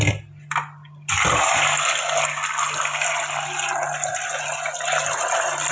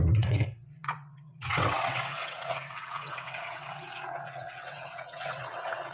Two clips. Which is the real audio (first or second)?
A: first